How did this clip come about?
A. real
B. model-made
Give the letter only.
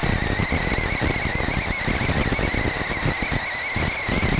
A